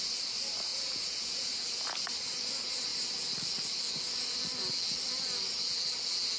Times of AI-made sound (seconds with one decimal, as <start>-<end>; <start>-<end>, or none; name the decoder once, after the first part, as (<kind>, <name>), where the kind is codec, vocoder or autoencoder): 0.7-1.6 (vocoder, Vocos)